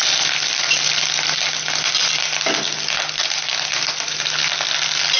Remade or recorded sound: recorded